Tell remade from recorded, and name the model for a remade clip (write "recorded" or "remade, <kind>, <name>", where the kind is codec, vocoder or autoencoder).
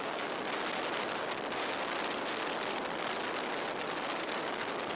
recorded